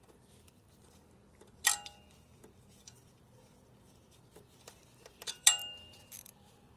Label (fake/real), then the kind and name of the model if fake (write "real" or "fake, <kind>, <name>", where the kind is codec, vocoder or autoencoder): fake, vocoder, BigVGAN v2